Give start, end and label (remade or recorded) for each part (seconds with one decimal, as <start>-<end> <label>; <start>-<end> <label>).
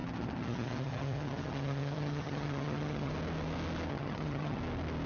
0.0-3.1 remade; 3.1-3.9 recorded; 3.9-4.6 remade; 4.6-5.1 recorded